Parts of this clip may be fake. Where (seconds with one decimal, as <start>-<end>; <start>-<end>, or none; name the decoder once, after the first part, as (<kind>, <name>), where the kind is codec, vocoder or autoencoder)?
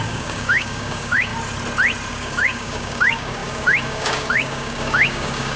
0.0-1.3 (codec, DAC); 2.1-5.6